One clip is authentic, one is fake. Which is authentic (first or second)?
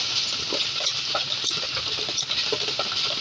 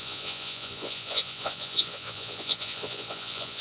first